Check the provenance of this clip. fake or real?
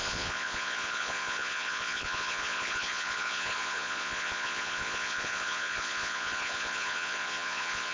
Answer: fake